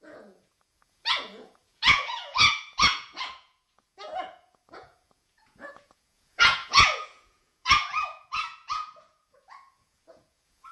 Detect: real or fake fake